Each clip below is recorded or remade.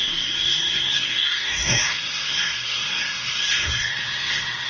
remade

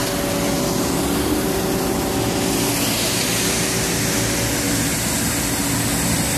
recorded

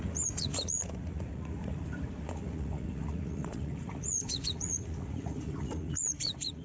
remade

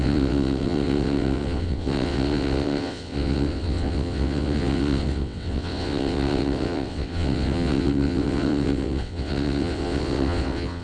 remade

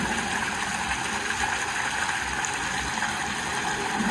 recorded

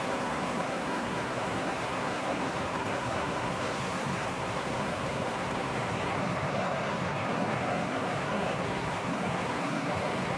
remade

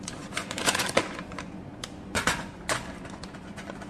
remade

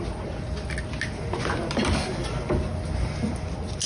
recorded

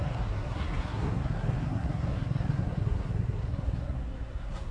remade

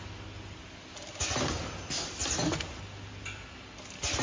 recorded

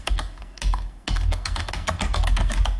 remade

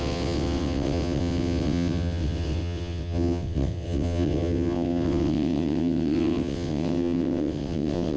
remade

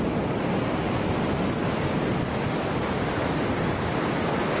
recorded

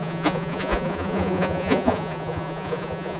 remade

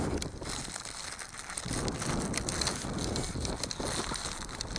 recorded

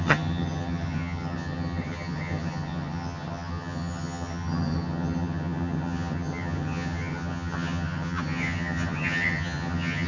remade